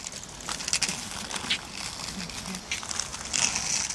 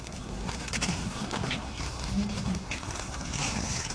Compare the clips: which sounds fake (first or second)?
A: second